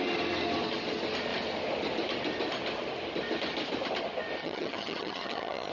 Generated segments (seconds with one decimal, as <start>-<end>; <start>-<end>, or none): 4.4-5.7